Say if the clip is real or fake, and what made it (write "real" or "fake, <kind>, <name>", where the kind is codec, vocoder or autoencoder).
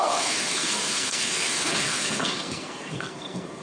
fake, codec, SNAC